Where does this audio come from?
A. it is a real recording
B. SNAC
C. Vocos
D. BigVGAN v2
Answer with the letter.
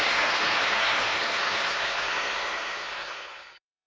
B